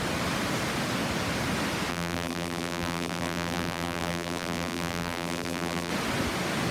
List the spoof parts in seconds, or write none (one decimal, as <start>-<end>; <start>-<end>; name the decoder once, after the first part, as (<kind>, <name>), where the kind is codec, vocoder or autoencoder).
1.9-5.9 (vocoder, BigVGAN v2)